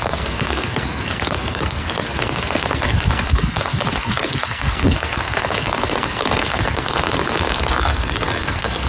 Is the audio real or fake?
fake